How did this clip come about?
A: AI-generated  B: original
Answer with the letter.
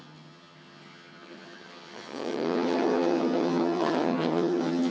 A